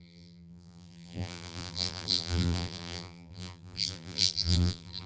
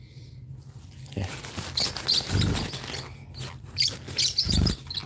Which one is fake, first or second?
first